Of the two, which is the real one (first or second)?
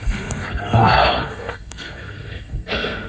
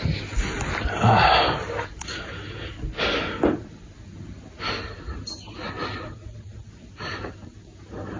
second